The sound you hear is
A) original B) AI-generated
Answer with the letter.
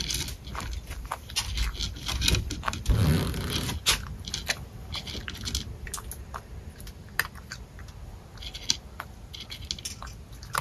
A